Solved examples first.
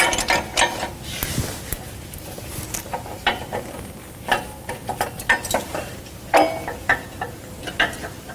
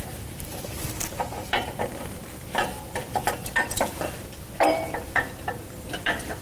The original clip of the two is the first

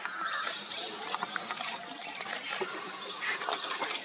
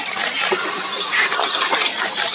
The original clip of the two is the second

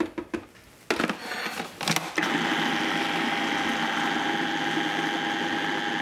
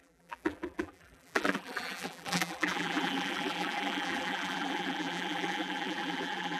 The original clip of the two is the first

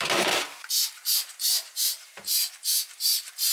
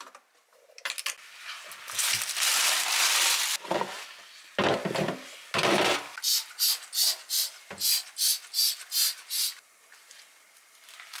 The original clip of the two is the second